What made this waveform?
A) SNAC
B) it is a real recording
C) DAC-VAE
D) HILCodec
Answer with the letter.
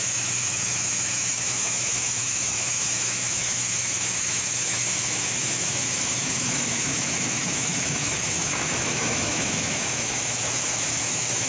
C